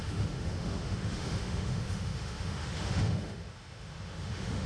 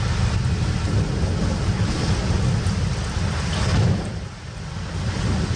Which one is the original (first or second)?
second